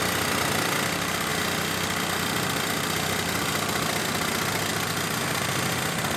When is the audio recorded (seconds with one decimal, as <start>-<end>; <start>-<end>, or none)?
0.0-6.2